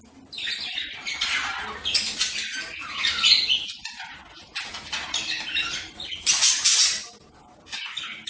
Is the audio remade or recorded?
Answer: recorded